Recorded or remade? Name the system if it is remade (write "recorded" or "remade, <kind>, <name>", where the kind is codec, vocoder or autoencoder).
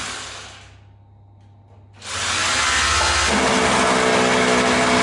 recorded